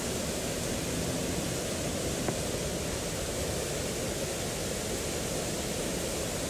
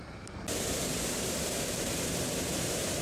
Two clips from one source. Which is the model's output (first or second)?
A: second